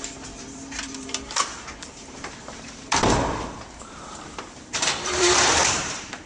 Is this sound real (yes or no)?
no